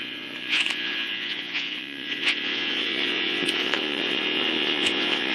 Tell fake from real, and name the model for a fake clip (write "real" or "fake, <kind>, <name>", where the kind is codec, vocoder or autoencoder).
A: fake, vocoder, Vocos